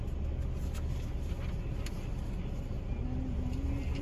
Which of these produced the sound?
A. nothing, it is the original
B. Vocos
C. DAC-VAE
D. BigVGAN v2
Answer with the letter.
A